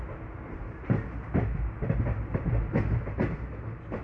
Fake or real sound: real